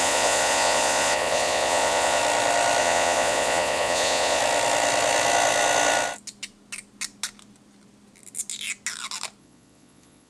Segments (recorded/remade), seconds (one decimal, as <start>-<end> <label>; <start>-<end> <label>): 0.0-2.2 remade; 2.2-2.8 recorded; 2.8-4.4 remade; 4.4-9.4 recorded; 9.4-10.3 remade